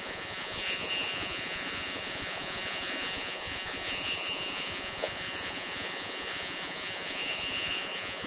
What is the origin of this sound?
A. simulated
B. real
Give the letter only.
A